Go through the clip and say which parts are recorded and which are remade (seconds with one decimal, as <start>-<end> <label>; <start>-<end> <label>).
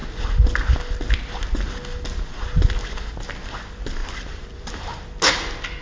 0.0-4.0 recorded; 4.0-4.7 remade; 4.7-5.8 recorded